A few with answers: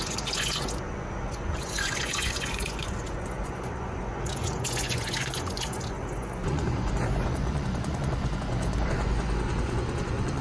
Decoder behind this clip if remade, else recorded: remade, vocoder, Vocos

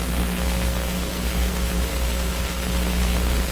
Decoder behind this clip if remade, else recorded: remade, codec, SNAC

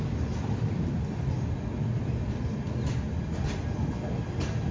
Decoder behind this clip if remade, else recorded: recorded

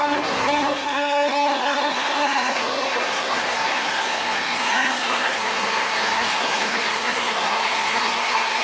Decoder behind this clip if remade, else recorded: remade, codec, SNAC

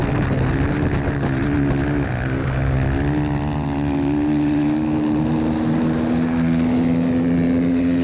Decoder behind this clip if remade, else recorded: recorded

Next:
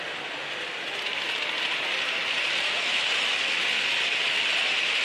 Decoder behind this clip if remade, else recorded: recorded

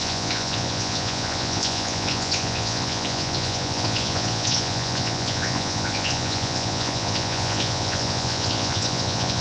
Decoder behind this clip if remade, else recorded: remade, vocoder, Vocos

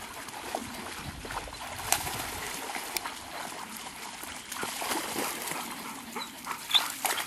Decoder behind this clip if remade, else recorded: recorded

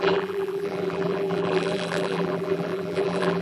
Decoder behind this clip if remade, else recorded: remade, vocoder, BigVGAN v2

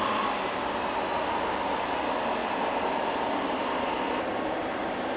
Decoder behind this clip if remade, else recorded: recorded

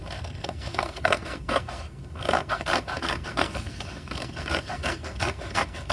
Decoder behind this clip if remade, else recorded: remade, codec, SNAC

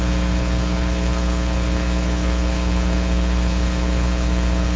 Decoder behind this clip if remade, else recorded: remade, codec, HILCodec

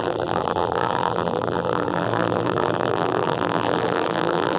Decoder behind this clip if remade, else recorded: remade, vocoder, BigVGAN v2